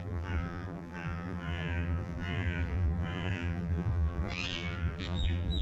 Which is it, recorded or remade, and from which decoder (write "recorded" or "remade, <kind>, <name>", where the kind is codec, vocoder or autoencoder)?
remade, vocoder, BigVGAN v2